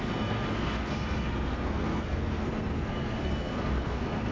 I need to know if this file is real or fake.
fake